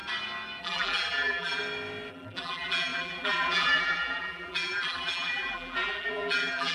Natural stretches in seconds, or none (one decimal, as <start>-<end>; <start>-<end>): 0.0-0.6; 1.6-2.1